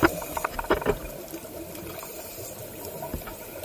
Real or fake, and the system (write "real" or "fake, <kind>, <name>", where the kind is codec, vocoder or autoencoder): fake, vocoder, BigVGAN v2